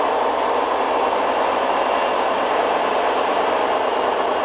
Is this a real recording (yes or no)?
yes